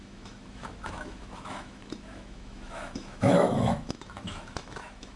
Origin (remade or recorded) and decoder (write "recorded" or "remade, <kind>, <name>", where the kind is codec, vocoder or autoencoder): remade, autoencoder, DAC-VAE